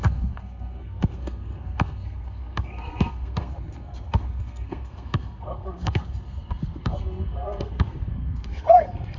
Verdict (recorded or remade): remade